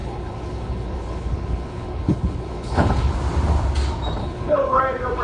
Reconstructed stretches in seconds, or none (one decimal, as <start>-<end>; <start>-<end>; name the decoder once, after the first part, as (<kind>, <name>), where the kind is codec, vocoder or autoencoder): 0.0-3.1 (codec, HILCodec); 4.2-4.8